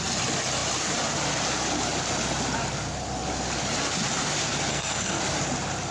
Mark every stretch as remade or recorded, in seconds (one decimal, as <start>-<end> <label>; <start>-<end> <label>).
0.0-4.7 recorded; 4.7-5.2 remade; 5.2-5.9 recorded